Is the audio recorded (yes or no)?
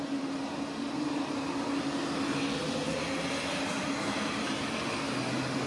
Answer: yes